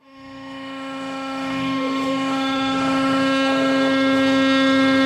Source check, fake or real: fake